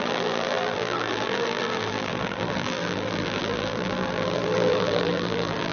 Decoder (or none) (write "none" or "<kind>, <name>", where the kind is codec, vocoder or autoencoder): vocoder, BigVGAN v2